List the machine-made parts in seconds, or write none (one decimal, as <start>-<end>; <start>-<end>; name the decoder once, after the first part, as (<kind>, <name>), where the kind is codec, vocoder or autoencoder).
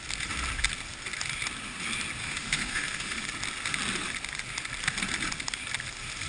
2.2-3.3 (autoencoder, DAC-VAE)